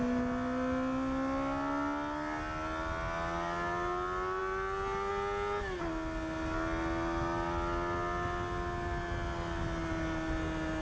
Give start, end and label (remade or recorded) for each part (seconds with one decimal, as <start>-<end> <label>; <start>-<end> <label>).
0.0-10.8 recorded

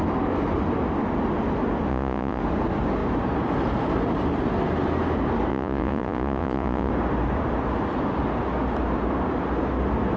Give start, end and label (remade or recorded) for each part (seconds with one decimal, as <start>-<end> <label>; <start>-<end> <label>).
0.0-1.9 recorded; 1.9-2.4 remade; 2.4-5.5 recorded; 5.5-6.9 remade; 6.9-10.2 recorded

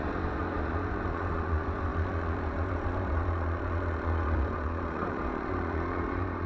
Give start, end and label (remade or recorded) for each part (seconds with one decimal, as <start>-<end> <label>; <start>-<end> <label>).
0.0-6.5 remade